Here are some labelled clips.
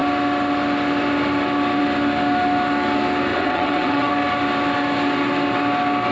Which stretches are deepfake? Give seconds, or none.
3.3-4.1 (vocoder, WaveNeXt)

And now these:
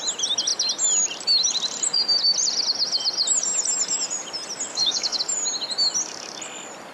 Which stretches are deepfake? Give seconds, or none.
4.7-5.2 (codec, DAC)

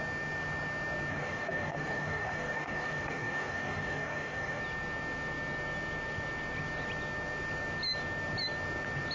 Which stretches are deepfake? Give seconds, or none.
1.1-4.6 (codec, DAC)

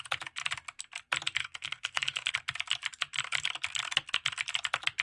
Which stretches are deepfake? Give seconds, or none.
1.4-2.3 (codec, SNAC)